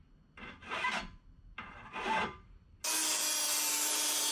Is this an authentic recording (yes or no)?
yes